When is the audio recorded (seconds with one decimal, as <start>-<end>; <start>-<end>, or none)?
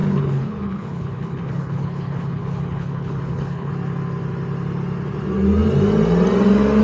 3.7-6.8